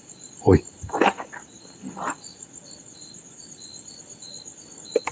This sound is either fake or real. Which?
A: real